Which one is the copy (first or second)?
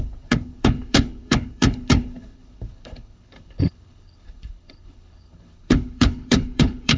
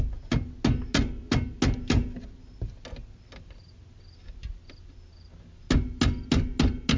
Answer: first